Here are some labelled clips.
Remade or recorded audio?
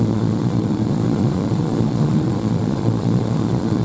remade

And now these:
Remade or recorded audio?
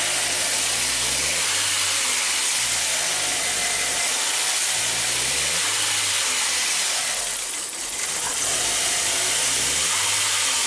recorded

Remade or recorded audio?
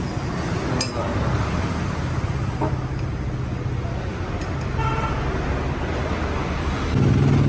recorded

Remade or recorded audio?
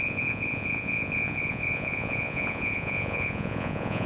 remade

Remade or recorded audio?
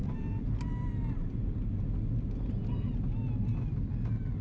recorded